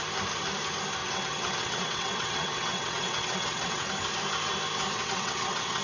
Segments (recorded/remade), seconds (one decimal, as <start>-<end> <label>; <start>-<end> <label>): 0.0-1.0 recorded; 1.0-3.9 remade; 3.9-4.9 recorded; 4.9-5.8 remade